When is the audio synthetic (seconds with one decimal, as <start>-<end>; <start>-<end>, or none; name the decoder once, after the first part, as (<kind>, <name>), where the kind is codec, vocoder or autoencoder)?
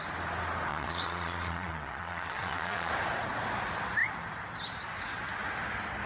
0.7-2.9 (vocoder, Vocos)